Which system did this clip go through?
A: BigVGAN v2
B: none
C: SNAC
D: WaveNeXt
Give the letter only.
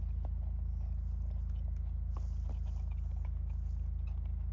B